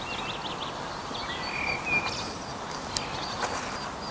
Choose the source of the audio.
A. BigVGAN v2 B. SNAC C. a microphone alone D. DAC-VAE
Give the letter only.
C